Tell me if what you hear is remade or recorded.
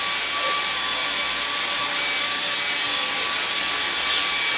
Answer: recorded